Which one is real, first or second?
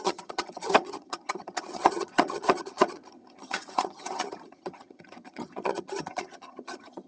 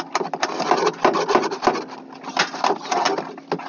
second